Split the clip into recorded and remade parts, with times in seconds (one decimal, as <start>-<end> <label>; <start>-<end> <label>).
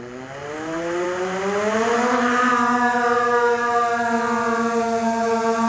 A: 0.0-0.4 recorded; 0.4-1.4 remade; 1.4-5.7 recorded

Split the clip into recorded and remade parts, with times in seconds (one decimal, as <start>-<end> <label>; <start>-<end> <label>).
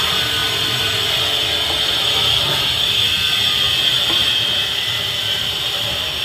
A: 0.0-0.4 remade; 0.4-2.5 recorded; 2.5-6.2 remade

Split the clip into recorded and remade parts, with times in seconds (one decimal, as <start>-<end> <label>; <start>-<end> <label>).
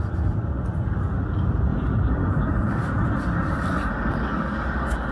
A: 0.0-5.1 recorded